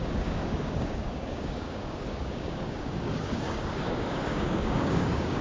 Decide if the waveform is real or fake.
fake